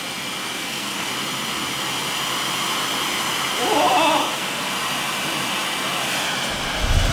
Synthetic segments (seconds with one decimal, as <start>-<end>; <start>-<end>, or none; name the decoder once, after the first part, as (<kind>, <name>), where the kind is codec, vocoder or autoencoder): 0.4-1.1 (codec, SNAC); 4.2-4.7